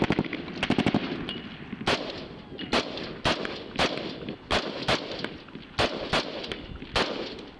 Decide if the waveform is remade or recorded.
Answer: recorded